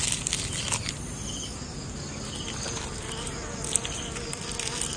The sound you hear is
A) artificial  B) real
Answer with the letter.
B